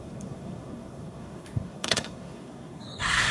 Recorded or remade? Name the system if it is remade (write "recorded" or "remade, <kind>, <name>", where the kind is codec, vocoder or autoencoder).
remade, codec, SNAC